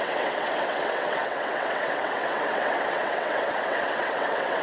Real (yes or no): no